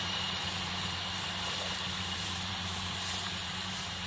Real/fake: fake